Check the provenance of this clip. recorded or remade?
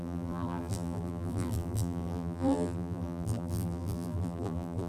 remade